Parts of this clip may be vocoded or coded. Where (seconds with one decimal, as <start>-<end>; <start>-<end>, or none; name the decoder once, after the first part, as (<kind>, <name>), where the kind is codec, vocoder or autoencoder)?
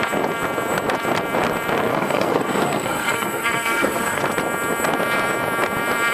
1.9-4.2 (codec, SNAC)